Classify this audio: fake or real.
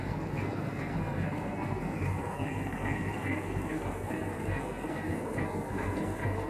fake